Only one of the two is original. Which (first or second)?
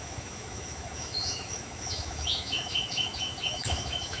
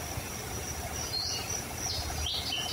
second